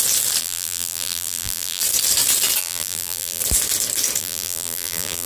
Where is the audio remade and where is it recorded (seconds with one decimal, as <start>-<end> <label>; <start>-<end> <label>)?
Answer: 0.0-0.4 recorded; 0.4-1.8 remade; 1.8-2.6 recorded; 2.6-3.4 remade; 3.4-4.2 recorded; 4.2-5.3 remade